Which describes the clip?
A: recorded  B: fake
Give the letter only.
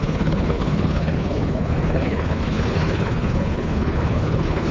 B